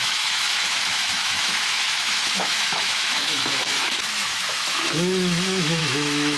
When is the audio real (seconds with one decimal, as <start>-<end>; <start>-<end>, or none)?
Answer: none